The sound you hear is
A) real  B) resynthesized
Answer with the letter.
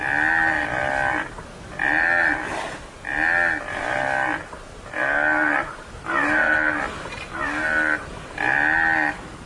A